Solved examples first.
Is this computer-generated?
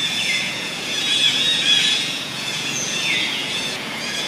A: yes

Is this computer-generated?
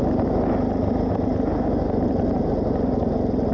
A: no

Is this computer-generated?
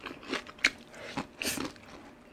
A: no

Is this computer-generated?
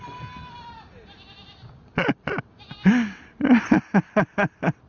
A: no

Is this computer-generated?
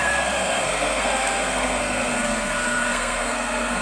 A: yes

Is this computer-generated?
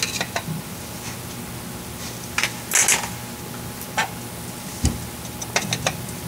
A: no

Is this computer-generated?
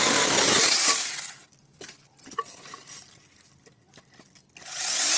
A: no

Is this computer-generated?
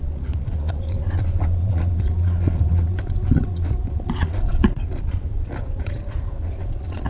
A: yes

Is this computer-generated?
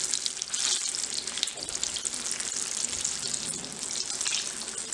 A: no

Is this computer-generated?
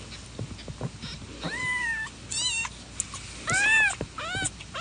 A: no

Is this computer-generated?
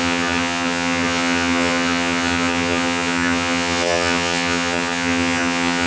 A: yes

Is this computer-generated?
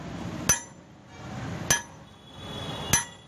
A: no